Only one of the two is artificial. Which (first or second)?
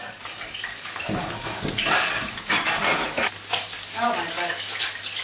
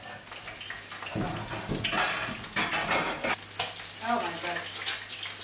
first